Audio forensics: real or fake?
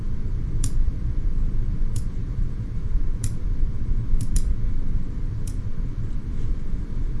fake